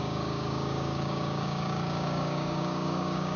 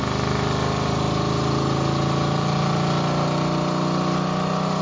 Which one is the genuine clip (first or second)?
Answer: second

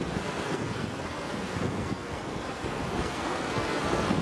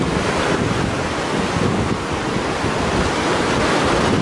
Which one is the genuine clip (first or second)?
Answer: second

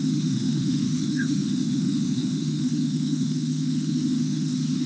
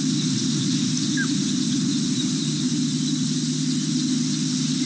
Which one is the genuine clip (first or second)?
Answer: second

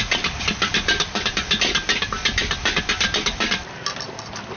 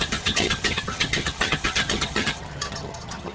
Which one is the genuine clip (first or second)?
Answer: first